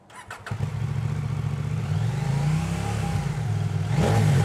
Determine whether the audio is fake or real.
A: real